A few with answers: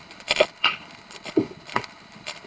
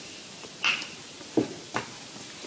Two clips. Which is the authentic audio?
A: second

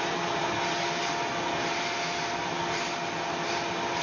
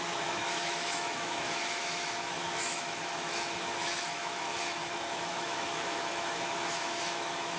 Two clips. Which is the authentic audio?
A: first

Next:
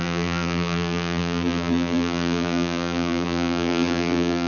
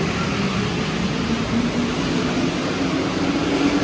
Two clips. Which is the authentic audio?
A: second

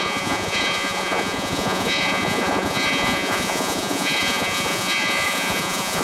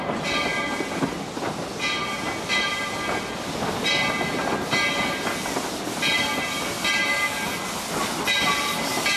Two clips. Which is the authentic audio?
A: second